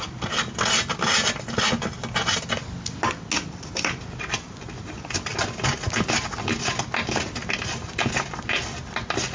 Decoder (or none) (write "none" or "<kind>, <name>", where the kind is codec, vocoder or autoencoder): none